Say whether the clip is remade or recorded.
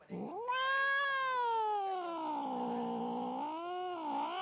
recorded